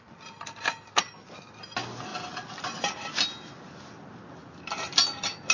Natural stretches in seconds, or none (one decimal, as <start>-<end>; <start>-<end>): 0.0-5.5